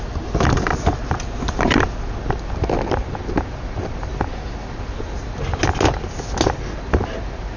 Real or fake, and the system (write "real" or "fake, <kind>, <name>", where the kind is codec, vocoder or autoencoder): real